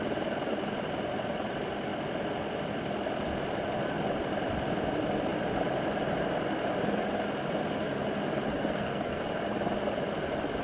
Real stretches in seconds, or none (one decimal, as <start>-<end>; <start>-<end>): 0.0-8.5; 9.2-10.6

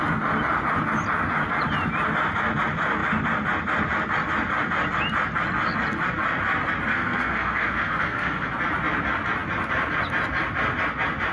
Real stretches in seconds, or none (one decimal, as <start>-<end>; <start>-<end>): 0.0-6.9; 8.5-11.3

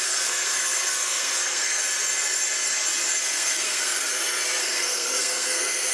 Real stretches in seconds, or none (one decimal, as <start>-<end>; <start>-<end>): 1.8-3.2; 4.1-4.6

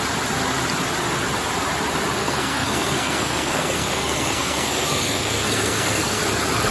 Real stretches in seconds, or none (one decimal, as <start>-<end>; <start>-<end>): 0.0-2.2; 6.2-6.7

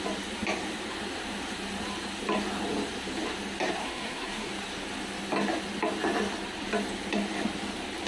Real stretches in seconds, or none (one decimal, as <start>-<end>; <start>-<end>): 0.0-3.8; 4.5-8.1

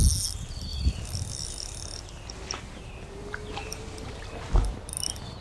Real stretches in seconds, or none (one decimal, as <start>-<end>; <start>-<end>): 0.0-5.4